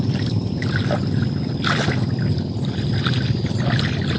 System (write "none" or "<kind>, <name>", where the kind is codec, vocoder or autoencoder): none